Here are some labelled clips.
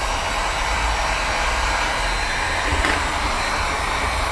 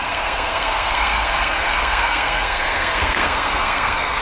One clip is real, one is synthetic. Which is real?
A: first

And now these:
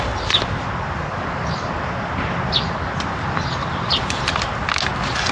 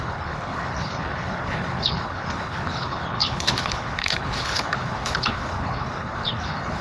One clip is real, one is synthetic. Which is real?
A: first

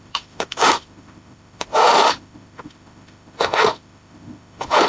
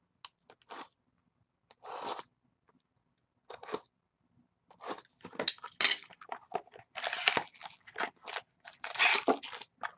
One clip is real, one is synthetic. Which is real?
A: second